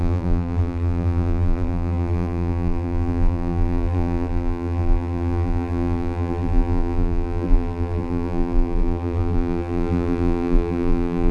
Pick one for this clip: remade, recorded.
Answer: remade